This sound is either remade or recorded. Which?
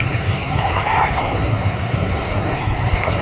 remade